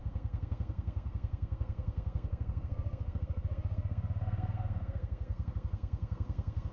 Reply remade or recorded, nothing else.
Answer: remade